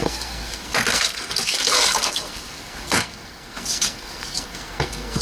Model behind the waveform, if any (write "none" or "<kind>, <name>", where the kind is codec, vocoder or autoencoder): codec, SNAC